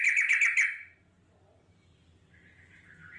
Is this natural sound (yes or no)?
yes